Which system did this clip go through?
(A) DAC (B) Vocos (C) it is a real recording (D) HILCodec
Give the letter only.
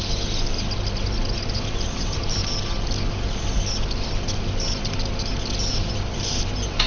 C